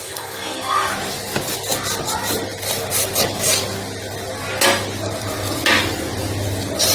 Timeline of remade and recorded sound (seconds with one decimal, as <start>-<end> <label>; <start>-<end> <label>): 0.0-0.9 remade; 0.9-6.9 recorded